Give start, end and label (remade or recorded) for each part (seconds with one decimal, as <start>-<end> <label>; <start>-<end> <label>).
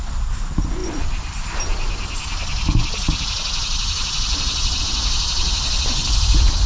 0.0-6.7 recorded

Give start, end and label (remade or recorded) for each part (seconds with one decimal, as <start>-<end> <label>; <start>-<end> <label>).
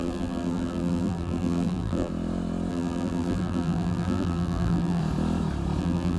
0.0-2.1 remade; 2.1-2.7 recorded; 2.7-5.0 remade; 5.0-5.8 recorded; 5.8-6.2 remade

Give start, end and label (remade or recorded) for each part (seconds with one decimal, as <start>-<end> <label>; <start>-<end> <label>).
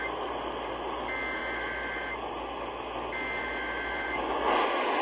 0.0-5.0 recorded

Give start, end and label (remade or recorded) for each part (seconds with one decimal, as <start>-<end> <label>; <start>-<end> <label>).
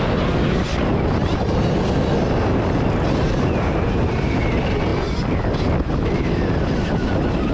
0.0-7.5 recorded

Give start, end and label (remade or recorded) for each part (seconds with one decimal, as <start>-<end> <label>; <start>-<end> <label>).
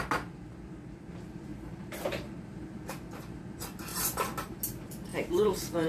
0.0-1.5 recorded; 1.5-3.4 remade; 3.4-3.9 recorded; 3.9-4.6 remade; 4.6-5.1 recorded; 5.1-5.9 remade